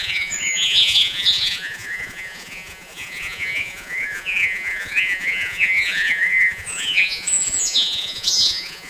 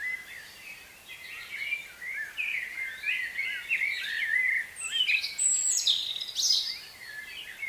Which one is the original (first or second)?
second